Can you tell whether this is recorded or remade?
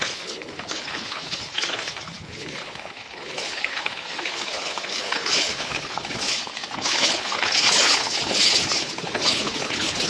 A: remade